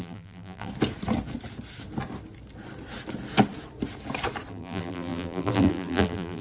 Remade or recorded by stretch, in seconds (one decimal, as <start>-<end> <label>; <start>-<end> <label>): 0.0-0.7 remade; 0.7-4.5 recorded; 4.5-6.4 remade